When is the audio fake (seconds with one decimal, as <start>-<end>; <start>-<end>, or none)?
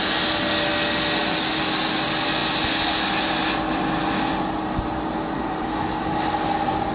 none